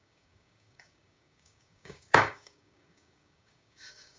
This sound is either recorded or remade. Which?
remade